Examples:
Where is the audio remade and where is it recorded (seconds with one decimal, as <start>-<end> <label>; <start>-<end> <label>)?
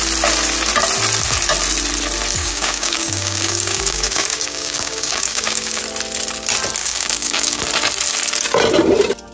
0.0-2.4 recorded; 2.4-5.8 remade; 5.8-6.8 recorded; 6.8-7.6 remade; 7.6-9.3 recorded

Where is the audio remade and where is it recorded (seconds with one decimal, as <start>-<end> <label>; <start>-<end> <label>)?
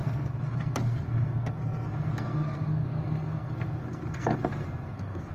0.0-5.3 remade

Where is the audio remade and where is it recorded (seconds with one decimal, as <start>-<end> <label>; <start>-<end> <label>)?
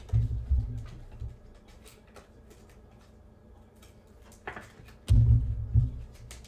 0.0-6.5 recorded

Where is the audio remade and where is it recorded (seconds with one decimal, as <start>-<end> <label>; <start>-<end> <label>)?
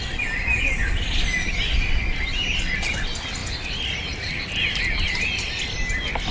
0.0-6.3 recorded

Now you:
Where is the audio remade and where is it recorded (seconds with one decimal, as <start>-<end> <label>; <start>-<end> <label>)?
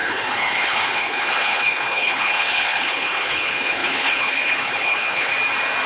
0.0-5.3 remade; 5.3-5.9 recorded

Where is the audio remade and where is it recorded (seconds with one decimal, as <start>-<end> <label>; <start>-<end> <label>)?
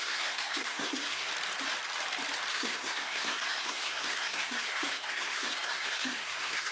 0.0-1.3 remade; 1.3-2.5 recorded; 2.5-6.7 remade